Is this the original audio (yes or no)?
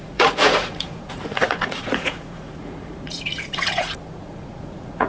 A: no